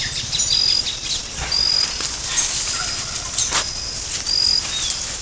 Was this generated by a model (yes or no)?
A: no